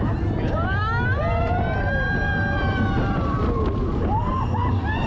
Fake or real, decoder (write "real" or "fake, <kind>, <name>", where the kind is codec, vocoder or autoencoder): real